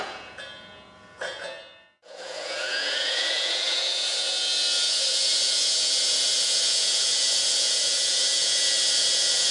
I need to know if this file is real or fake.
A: fake